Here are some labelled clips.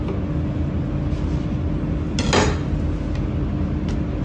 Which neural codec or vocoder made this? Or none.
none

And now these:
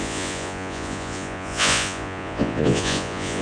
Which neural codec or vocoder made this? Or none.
vocoder, Vocos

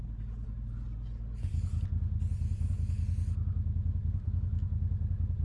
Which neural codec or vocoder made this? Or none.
none